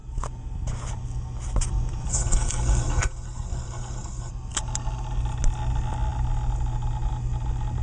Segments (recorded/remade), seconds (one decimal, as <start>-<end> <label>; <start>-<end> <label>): 0.0-2.1 recorded; 2.1-4.3 remade; 4.3-7.8 recorded